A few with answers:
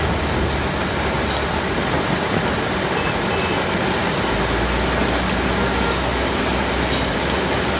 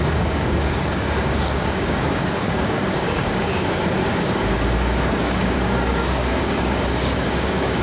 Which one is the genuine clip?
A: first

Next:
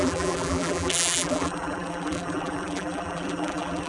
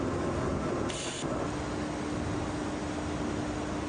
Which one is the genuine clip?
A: second